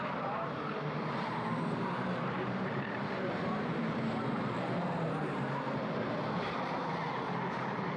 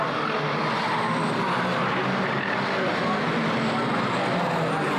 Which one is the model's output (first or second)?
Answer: first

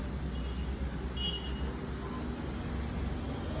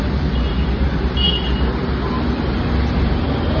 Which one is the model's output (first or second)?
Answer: second